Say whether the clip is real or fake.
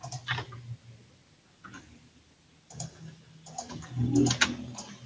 real